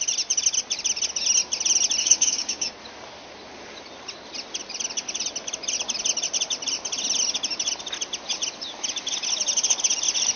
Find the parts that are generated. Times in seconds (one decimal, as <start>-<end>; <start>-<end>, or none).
2.0-2.7